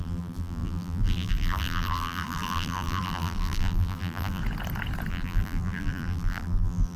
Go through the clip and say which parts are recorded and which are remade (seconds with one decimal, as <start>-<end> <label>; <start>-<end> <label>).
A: 0.0-4.4 remade; 4.4-5.1 recorded; 5.1-7.0 remade

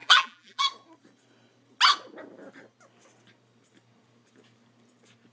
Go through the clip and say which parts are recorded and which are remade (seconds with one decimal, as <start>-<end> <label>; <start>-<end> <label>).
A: 0.0-0.6 remade; 0.6-5.3 recorded

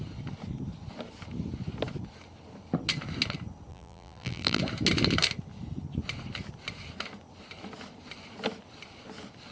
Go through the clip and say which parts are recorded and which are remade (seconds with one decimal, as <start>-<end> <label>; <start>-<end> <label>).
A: 0.0-3.7 recorded; 3.7-4.6 remade; 4.6-9.5 recorded

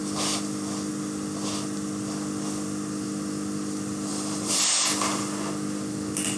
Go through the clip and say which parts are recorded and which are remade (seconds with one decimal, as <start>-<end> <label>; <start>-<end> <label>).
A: 0.0-4.1 recorded; 4.1-4.6 remade; 4.6-6.4 recorded

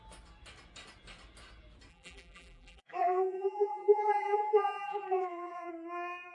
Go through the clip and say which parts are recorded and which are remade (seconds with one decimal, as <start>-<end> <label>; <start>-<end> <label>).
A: 0.0-1.9 recorded; 1.9-5.7 remade; 5.7-6.3 recorded

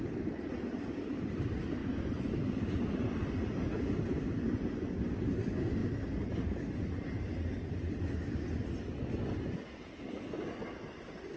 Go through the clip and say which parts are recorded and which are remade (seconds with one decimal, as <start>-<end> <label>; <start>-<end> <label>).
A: 0.0-5.8 recorded; 5.8-6.9 remade; 6.9-11.4 recorded

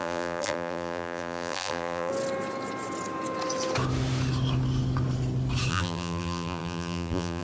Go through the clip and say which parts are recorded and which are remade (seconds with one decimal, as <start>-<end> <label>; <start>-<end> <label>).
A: 0.0-2.1 remade; 2.1-5.7 recorded; 5.7-7.4 remade

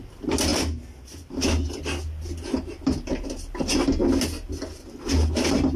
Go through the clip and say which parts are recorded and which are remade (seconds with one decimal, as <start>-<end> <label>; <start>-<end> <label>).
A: 0.0-5.8 recorded